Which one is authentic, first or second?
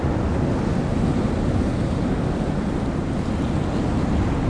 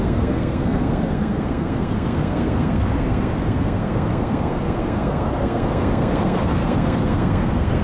first